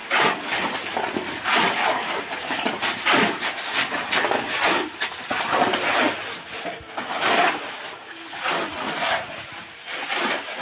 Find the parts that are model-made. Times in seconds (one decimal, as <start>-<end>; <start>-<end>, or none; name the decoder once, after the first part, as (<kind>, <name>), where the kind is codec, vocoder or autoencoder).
none